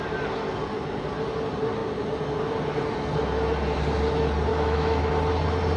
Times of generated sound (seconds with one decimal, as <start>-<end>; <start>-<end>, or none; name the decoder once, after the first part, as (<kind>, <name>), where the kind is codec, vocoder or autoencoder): 4.5-5.1 (autoencoder, DAC-VAE)